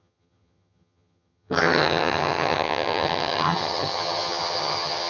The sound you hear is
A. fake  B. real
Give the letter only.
A